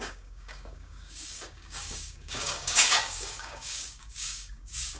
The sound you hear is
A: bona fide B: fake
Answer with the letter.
B